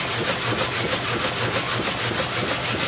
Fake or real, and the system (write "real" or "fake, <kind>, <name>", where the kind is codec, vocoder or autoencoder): real